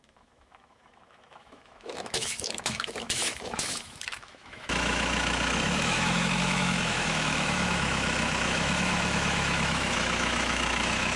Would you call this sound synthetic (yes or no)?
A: yes